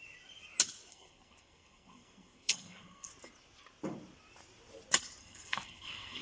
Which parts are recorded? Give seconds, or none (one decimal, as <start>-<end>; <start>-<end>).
0.0-0.9; 3.1-5.2